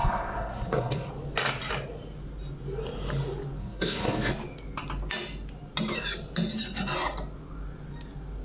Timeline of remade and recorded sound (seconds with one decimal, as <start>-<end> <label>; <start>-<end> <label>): 0.0-1.1 remade; 1.1-3.6 recorded; 3.6-4.3 remade; 4.3-8.4 recorded

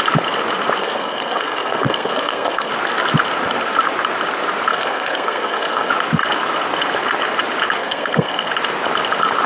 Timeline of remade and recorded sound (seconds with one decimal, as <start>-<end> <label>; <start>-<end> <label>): 0.0-0.8 recorded; 0.8-2.7 remade; 2.7-4.7 recorded; 4.7-5.9 remade; 5.9-7.8 recorded; 7.8-8.5 remade; 8.5-9.5 recorded

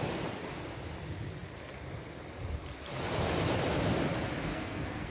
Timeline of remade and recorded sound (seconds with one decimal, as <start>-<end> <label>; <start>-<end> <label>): 0.0-4.5 recorded; 4.5-5.1 remade